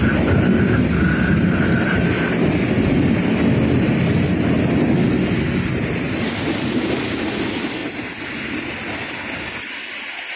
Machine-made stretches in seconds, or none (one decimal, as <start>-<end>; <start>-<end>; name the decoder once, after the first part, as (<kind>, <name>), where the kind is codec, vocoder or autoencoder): none